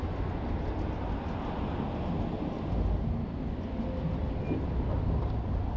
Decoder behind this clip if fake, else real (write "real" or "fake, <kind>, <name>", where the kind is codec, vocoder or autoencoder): real